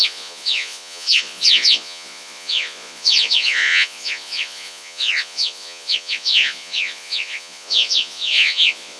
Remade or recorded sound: remade